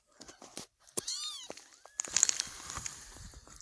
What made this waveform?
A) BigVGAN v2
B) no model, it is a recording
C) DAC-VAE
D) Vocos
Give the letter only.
A